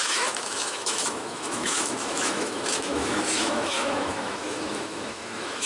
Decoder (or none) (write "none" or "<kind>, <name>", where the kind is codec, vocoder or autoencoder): autoencoder, DAC-VAE